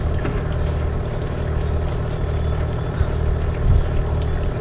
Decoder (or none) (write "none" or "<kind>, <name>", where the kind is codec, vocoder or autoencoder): none